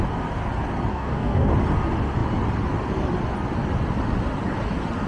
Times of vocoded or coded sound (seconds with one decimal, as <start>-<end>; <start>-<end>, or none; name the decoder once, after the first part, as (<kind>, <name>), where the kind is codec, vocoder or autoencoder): 0.9-1.5 (codec, DAC)